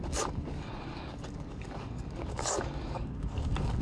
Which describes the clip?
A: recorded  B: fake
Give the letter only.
B